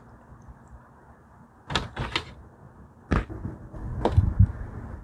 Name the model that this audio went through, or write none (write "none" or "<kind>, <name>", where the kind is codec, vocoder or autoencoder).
none